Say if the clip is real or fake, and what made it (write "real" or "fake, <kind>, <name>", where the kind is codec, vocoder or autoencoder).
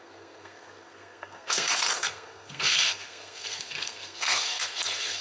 fake, codec, SNAC